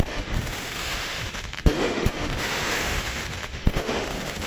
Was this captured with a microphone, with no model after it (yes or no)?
no